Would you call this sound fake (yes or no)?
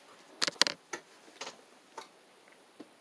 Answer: no